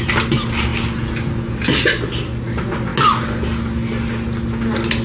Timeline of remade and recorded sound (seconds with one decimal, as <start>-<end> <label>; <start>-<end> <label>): 0.0-5.0 recorded